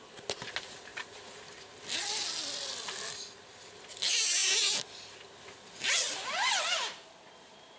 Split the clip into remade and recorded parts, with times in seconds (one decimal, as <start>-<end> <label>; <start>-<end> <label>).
0.0-7.8 recorded